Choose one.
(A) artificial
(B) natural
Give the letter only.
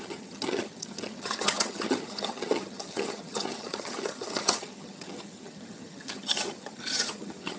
A